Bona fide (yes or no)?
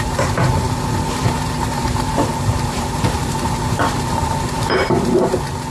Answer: no